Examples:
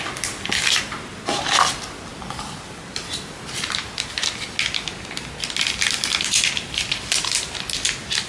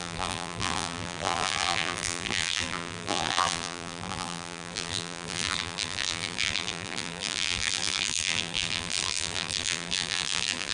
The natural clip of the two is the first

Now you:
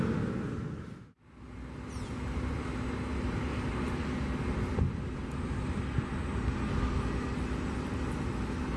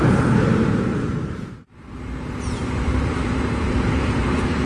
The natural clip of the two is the first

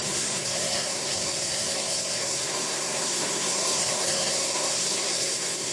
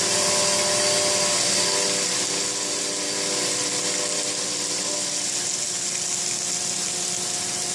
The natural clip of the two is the second